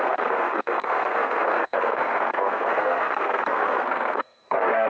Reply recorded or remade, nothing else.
remade